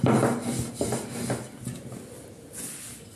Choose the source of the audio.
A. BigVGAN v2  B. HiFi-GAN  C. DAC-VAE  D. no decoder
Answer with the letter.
D